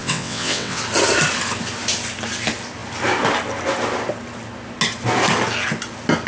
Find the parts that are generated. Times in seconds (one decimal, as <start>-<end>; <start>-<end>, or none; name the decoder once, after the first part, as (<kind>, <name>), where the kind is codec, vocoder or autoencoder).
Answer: 0.0-0.8 (vocoder, WaveNeXt)